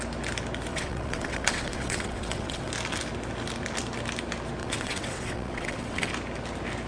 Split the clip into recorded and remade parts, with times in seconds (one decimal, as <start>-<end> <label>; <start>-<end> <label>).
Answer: 0.0-0.7 recorded; 0.7-2.7 remade; 2.7-4.6 recorded; 4.6-6.1 remade; 6.1-6.9 recorded